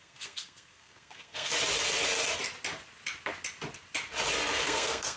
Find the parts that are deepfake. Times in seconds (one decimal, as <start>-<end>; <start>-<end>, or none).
0.0-1.5; 4.6-5.2